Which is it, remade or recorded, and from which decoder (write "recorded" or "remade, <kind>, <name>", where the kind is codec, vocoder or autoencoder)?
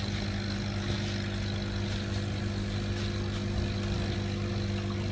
recorded